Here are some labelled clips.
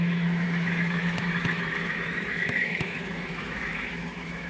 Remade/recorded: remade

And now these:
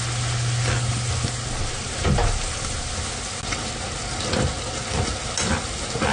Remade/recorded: recorded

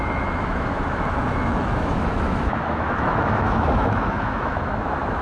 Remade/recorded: remade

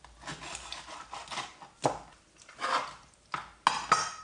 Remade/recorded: recorded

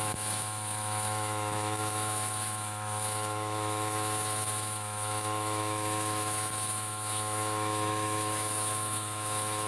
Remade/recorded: remade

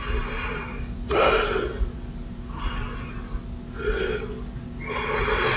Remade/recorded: recorded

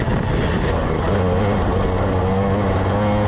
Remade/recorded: recorded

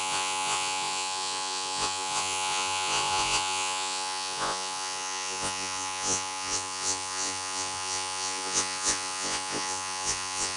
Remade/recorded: remade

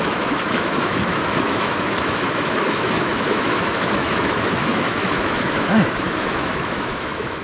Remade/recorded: remade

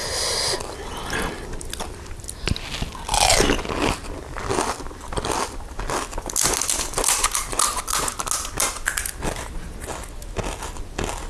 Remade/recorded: recorded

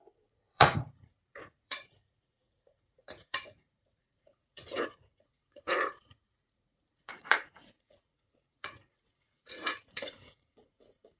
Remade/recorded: remade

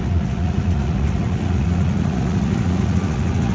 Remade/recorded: remade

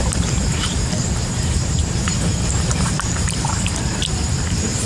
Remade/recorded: remade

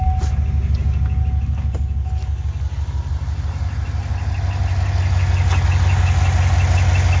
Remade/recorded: recorded